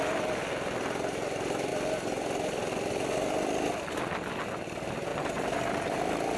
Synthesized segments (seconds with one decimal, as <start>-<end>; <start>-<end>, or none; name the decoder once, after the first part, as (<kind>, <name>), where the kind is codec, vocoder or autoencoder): none